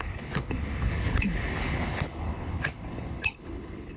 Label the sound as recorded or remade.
remade